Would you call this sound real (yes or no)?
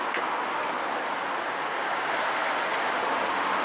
yes